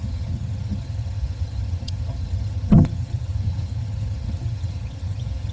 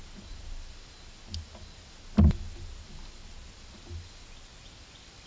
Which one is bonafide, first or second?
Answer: second